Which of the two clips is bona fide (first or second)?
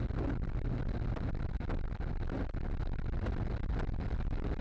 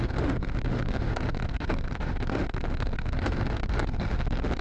first